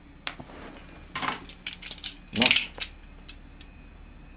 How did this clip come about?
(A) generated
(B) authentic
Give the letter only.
B